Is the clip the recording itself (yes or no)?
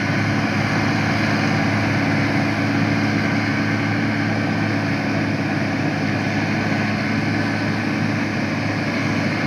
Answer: yes